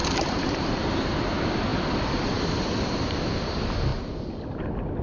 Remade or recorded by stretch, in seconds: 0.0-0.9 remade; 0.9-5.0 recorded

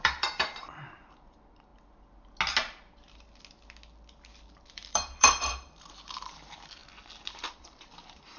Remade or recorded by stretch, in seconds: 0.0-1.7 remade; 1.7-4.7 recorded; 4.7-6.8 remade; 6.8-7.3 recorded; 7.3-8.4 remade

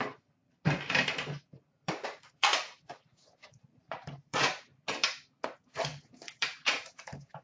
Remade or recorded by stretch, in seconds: 0.0-4.7 remade; 4.7-5.4 recorded; 5.4-7.4 remade

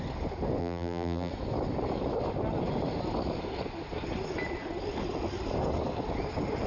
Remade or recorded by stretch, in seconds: 0.0-0.6 recorded; 0.6-1.3 remade; 1.3-6.7 recorded

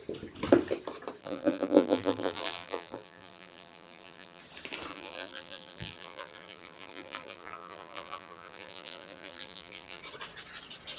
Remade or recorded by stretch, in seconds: 0.0-1.2 recorded; 1.2-4.4 remade; 4.4-4.9 recorded; 4.9-10.0 remade; 10.0-11.0 recorded

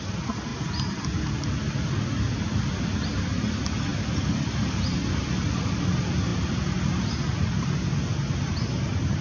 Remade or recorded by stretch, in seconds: 0.0-9.2 recorded

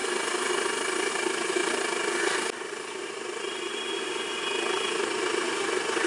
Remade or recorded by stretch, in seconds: 0.0-1.6 recorded; 1.6-3.4 remade; 3.4-6.1 recorded